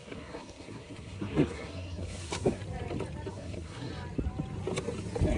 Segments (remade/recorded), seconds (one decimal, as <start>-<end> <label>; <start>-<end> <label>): 0.0-2.6 remade; 2.6-3.3 recorded; 3.3-3.9 remade; 3.9-5.4 recorded